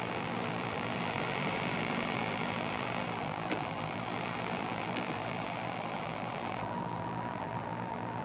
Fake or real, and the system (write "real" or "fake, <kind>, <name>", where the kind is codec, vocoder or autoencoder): fake, vocoder, BigVGAN v2